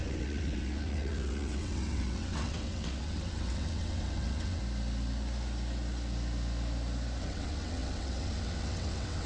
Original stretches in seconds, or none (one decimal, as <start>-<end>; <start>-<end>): 4.6-7.2